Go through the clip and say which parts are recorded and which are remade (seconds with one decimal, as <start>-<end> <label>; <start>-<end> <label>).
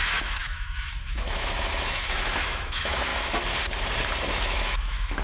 0.0-3.1 remade; 3.1-4.3 recorded; 4.3-5.2 remade